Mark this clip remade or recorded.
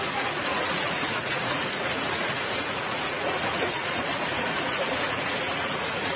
remade